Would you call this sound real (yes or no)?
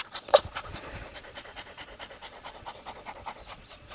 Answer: no